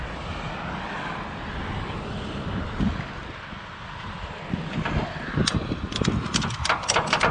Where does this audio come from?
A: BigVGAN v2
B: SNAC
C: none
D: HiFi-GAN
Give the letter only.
C